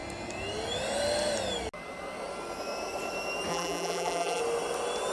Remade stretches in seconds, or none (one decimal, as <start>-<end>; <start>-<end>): 3.5-4.4